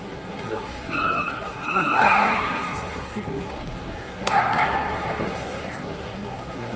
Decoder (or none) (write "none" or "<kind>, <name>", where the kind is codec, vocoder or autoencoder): codec, SNAC